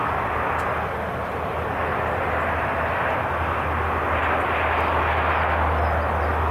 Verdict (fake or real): real